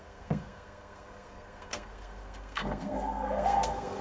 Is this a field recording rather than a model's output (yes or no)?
no